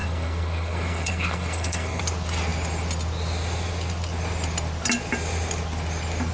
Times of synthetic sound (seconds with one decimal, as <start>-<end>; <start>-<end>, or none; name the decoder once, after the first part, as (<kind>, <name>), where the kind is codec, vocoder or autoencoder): 0.0-2.0 (codec, SNAC)

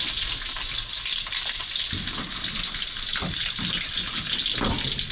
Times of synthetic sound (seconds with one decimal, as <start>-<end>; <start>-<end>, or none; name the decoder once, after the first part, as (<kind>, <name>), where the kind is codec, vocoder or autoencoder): none

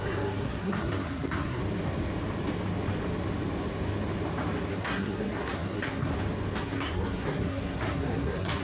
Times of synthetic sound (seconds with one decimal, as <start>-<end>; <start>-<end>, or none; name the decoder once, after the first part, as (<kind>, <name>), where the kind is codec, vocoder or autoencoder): 0.0-1.6 (codec, SNAC); 4.7-6.1; 6.6-8.6

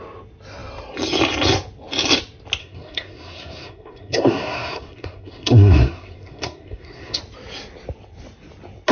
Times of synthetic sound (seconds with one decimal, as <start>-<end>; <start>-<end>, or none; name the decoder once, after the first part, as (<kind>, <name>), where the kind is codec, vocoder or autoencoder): 2.6-7.2 (codec, SNAC)